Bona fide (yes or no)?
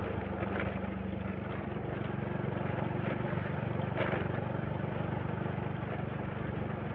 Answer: yes